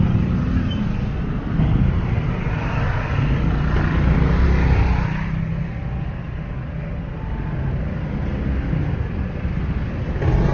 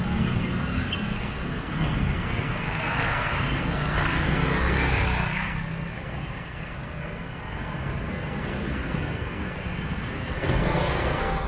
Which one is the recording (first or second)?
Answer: first